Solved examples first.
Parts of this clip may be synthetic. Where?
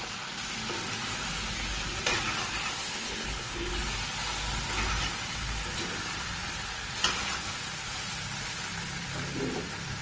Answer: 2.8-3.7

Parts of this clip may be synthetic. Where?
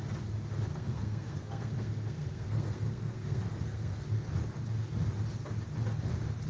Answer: 0.7-4.3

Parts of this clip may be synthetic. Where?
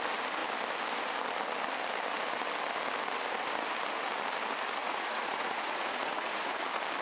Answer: 4.8-6.6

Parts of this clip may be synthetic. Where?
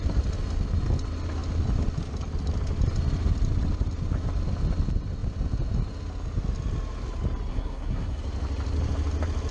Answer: 7.5-8.2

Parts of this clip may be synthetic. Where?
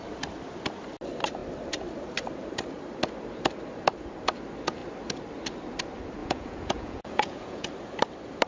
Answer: 6.2-7.7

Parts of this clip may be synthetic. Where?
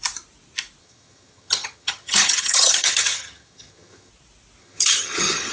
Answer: 0.8-4.1; 4.6-5.5